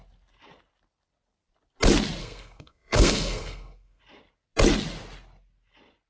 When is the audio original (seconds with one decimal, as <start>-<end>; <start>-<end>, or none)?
0.0-2.2; 4.0-6.1